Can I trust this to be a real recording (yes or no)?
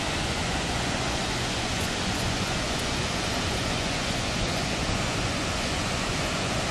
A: no